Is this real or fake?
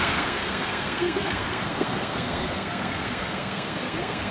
fake